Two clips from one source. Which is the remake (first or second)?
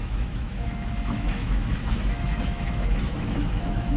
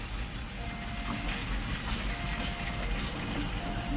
first